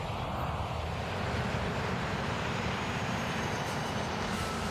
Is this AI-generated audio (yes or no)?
yes